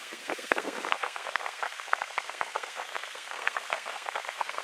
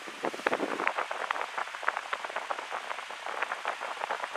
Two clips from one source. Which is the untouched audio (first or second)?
second